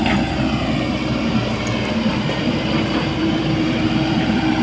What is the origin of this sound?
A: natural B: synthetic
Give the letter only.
B